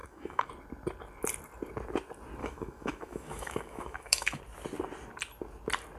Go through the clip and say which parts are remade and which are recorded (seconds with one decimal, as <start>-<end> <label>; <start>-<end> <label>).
0.0-0.5 remade; 0.5-2.4 recorded; 2.4-4.4 remade; 4.4-6.0 recorded